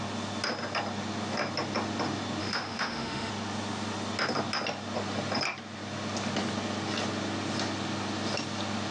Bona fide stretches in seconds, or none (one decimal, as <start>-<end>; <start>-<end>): 0.0-2.4; 3.3-8.9